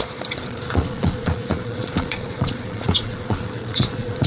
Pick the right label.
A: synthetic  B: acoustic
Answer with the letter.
A